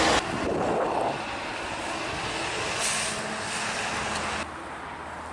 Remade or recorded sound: recorded